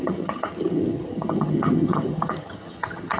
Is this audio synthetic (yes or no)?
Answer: yes